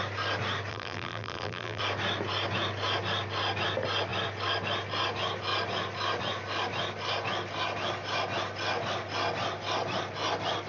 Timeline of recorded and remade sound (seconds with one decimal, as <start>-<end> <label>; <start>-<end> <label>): 0.0-0.7 recorded; 0.7-1.8 remade; 1.8-10.7 recorded